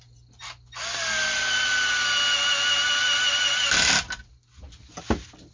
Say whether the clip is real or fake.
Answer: real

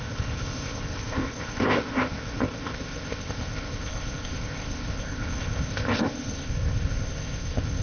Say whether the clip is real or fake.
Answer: fake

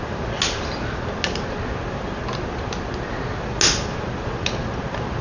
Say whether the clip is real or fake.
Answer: real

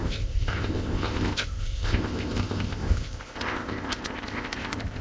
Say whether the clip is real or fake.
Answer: fake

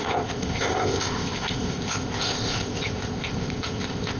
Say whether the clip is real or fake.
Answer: fake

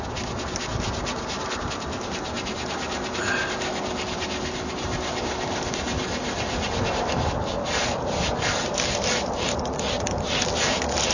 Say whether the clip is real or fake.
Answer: real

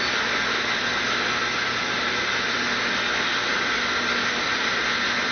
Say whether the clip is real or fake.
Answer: real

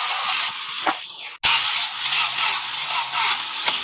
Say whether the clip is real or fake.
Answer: real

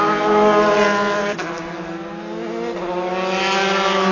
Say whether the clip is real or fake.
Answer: real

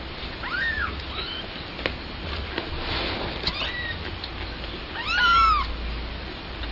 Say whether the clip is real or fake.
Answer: real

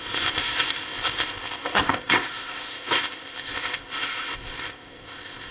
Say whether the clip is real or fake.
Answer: fake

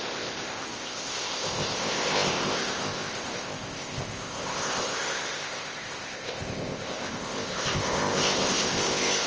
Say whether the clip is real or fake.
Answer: fake